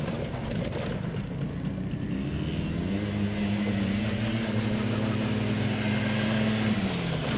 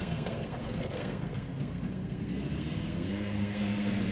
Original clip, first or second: first